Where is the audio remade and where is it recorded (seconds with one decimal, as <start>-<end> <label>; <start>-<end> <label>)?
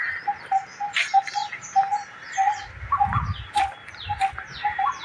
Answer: 0.0-5.0 recorded